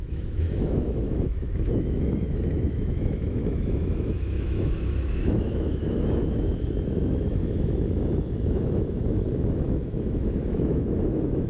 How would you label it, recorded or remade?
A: remade